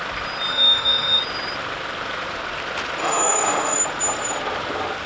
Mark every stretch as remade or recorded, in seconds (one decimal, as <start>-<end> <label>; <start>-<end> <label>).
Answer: 0.0-0.5 recorded; 0.5-1.2 remade; 1.2-3.0 recorded; 3.0-3.8 remade; 3.8-5.1 recorded